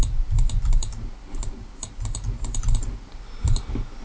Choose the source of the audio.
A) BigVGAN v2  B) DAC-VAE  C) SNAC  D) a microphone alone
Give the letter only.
D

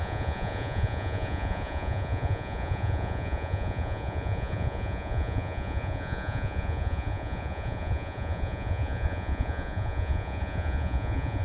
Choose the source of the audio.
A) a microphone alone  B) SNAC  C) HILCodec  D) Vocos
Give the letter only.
D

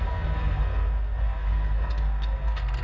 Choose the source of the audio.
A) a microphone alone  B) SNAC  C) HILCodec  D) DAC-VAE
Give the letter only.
B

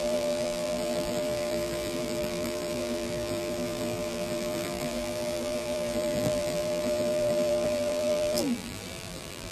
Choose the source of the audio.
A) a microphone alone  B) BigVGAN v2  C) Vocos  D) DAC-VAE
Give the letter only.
B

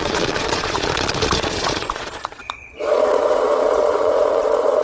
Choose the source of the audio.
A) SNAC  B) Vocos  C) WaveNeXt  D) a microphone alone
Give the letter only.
B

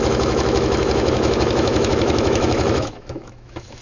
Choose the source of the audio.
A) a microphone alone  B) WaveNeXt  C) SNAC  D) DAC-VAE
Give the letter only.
D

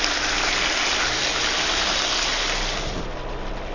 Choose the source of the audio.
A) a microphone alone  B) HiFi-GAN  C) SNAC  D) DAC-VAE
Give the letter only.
A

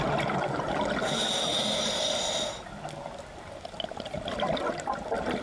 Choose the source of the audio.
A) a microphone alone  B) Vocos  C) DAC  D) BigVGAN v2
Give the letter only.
A